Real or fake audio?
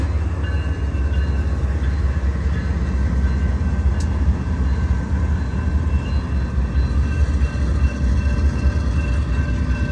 real